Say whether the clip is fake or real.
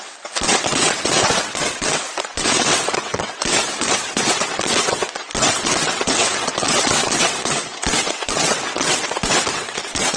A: fake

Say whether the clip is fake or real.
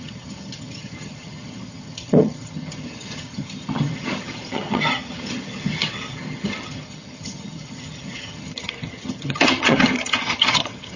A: fake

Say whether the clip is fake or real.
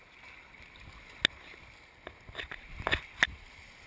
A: real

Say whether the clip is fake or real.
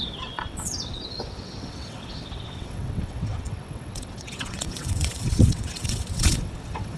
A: fake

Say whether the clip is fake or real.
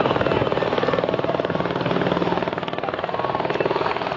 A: real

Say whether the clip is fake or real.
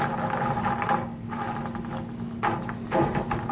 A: real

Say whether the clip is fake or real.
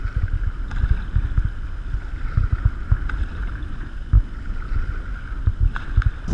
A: real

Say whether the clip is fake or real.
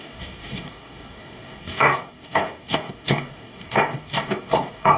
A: fake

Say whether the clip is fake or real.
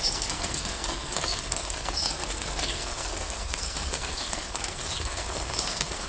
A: fake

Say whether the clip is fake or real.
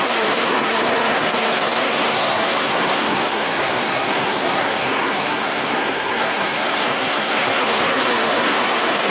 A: fake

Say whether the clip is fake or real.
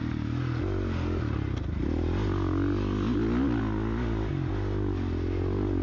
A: real